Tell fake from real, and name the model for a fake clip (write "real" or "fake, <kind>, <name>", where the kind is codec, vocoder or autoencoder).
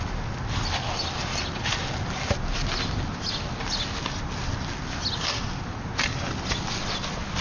real